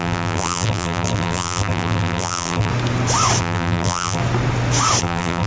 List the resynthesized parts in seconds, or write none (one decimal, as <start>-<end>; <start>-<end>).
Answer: 0.0-2.7; 3.4-4.2; 5.0-5.5